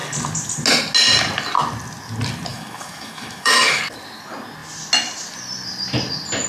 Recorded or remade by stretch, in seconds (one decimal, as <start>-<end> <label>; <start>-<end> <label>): 0.0-2.5 recorded; 2.5-3.8 remade; 3.8-6.5 recorded